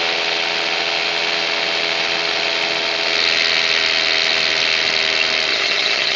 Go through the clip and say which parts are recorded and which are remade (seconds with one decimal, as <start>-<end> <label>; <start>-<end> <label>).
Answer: 0.0-5.5 recorded; 5.5-6.2 remade